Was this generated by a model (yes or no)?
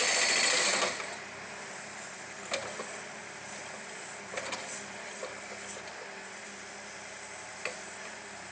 no